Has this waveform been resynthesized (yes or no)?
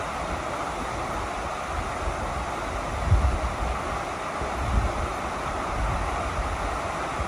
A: no